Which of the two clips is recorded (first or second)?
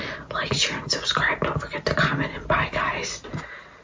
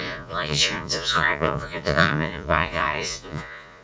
first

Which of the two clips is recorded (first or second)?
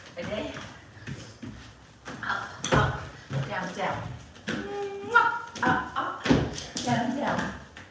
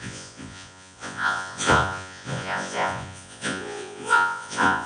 first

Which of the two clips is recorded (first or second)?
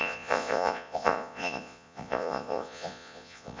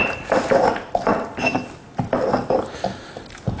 second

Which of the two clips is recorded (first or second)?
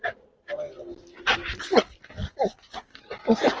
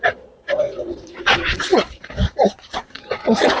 first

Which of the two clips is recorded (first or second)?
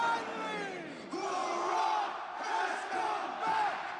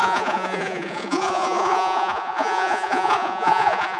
first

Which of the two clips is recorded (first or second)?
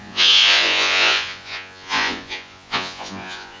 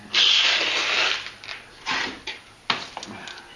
second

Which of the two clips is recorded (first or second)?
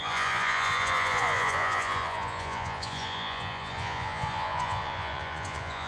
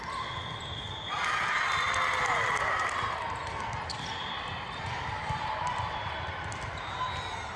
second